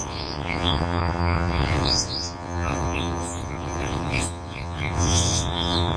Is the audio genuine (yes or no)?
no